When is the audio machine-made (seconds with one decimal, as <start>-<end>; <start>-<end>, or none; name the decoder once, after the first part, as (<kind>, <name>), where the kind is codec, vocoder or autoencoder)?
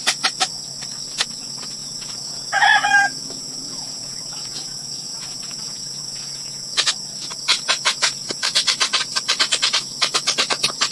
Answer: 1.8-6.9 (vocoder, Vocos); 7.5-8.6